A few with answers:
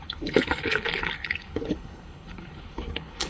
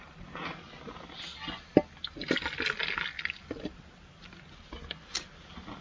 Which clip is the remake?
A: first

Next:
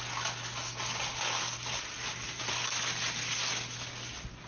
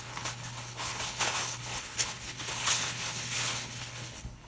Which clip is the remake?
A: second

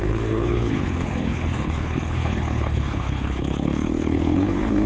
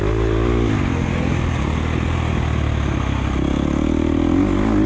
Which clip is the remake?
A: first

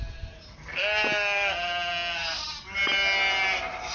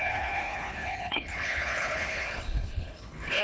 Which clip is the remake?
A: second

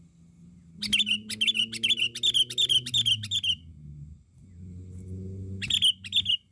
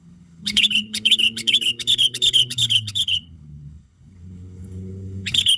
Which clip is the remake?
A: second